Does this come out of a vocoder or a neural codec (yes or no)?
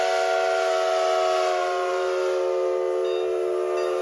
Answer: no